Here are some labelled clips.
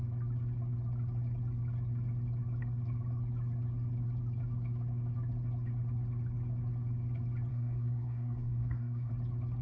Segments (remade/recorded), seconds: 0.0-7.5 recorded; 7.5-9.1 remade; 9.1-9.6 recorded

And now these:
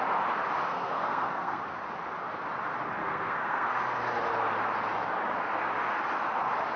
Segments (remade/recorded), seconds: 0.0-0.7 recorded; 0.7-1.6 remade; 1.6-3.0 recorded; 3.0-3.8 remade; 3.8-6.8 recorded

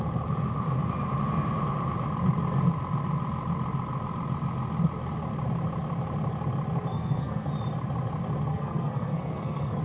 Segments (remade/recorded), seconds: 0.0-6.9 recorded; 6.9-7.5 remade; 7.5-8.5 recorded; 8.5-9.8 remade

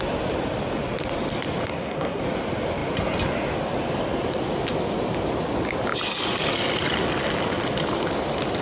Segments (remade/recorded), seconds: 0.0-1.7 recorded; 1.7-2.2 remade; 2.2-8.6 recorded

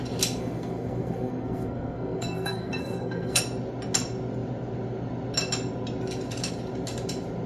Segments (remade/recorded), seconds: 0.0-0.4 recorded; 0.4-3.4 remade; 3.4-7.5 recorded

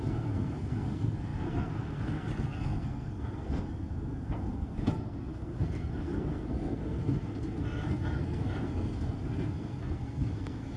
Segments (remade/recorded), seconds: 0.0-10.8 remade

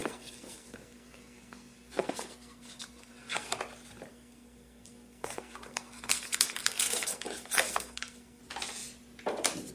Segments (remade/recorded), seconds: 0.0-3.6 remade; 3.6-4.1 recorded; 4.1-8.4 remade; 8.4-9.7 recorded

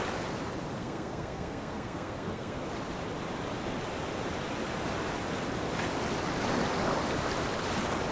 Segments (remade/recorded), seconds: 0.0-0.8 recorded; 0.8-2.6 remade; 2.6-8.1 recorded